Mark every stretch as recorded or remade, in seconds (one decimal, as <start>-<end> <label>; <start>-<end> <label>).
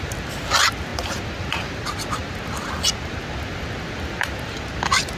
0.0-5.2 recorded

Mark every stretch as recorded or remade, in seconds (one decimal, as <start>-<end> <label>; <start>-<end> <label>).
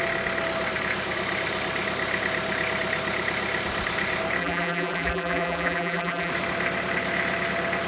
0.0-4.4 recorded; 4.4-6.3 remade; 6.3-7.9 recorded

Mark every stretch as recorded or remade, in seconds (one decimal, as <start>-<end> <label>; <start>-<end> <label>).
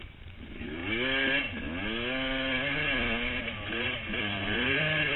0.0-0.8 remade; 0.8-3.4 recorded; 3.4-5.2 remade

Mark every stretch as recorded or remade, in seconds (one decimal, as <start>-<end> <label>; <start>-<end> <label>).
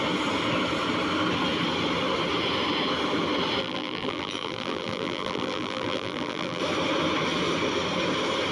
0.0-3.6 recorded; 3.6-6.6 remade; 6.6-8.5 recorded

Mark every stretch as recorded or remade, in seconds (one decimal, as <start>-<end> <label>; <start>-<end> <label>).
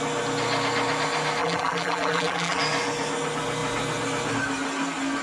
0.0-1.4 recorded; 1.4-2.6 remade; 2.6-5.2 recorded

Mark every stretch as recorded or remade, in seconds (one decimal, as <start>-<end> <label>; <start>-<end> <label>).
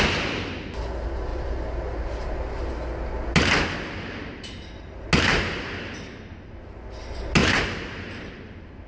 0.0-1.3 recorded; 1.3-2.7 remade; 2.7-7.4 recorded; 7.4-8.9 remade